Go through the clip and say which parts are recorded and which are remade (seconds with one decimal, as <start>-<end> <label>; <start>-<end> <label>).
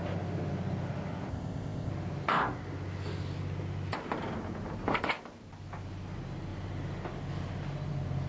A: 0.0-1.3 recorded; 1.3-1.9 remade; 1.9-8.3 recorded